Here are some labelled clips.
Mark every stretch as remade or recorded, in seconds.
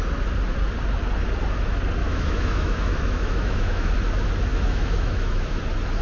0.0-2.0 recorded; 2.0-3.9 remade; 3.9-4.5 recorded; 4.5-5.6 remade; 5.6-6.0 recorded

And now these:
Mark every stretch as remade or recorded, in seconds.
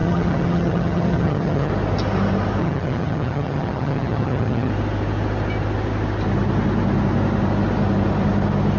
0.0-1.7 remade; 1.7-2.6 recorded; 2.6-4.7 remade; 4.7-8.8 recorded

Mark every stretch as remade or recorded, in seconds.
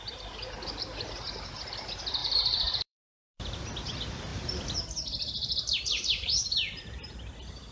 0.0-2.2 recorded; 2.2-3.6 remade; 3.6-5.4 recorded; 5.4-7.1 remade; 7.1-7.7 recorded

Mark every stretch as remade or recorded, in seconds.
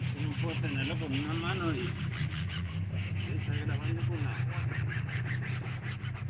0.0-2.1 recorded; 2.1-2.7 remade; 2.7-4.6 recorded; 4.6-5.3 remade; 5.3-6.3 recorded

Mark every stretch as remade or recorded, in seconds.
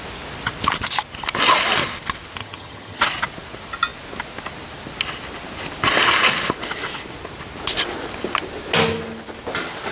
0.0-2.4 recorded; 2.4-3.0 remade; 3.0-9.9 recorded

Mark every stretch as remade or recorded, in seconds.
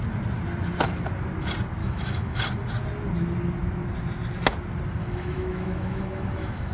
0.0-1.8 recorded; 1.8-2.4 remade; 2.4-5.0 recorded; 5.0-6.7 remade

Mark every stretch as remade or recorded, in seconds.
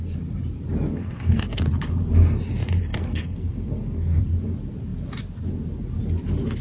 0.0-0.9 recorded; 0.9-1.6 remade; 1.6-2.9 recorded; 2.9-4.2 remade; 4.2-6.6 recorded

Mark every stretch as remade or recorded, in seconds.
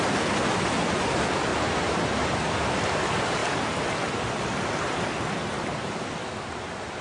0.0-7.0 recorded